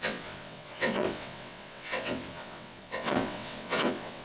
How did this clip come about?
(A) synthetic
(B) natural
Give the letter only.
A